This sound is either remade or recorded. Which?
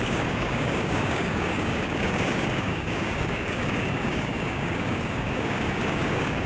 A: remade